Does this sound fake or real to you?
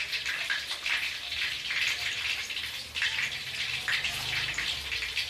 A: real